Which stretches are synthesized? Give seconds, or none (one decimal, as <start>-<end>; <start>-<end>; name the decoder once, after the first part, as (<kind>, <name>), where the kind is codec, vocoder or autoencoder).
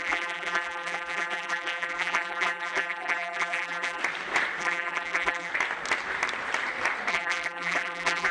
0.0-4.0 (vocoder, BigVGAN v2); 4.6-5.5; 7.1-8.3